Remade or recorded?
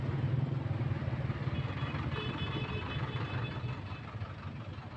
recorded